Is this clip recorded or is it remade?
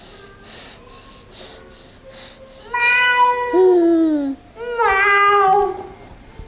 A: recorded